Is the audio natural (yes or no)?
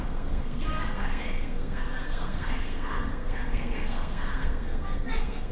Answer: no